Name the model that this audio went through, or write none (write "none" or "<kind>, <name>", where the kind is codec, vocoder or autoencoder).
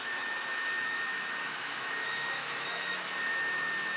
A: autoencoder, DAC-VAE